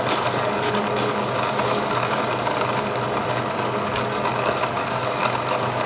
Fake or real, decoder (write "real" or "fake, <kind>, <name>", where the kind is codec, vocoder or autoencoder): fake, codec, DAC